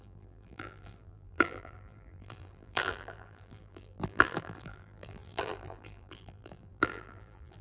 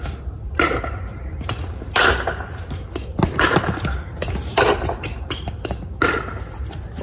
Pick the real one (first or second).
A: second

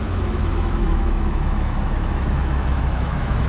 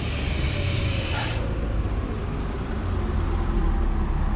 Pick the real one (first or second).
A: second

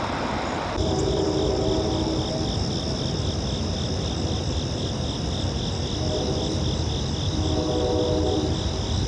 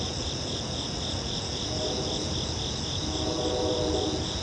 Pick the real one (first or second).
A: first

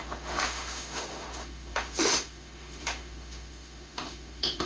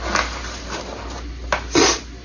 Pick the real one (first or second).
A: second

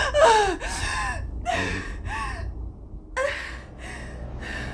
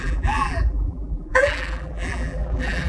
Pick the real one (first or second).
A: first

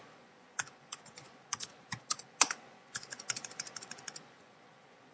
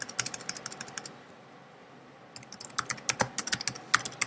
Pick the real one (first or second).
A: second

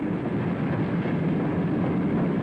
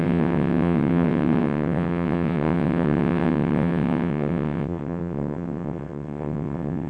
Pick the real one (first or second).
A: first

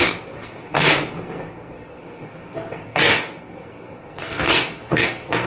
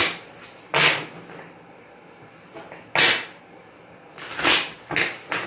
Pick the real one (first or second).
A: second